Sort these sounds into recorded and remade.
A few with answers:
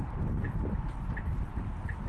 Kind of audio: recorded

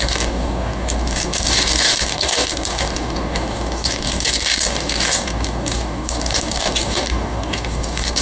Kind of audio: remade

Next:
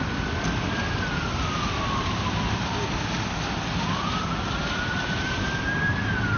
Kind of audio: remade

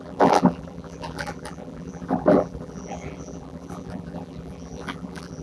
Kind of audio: remade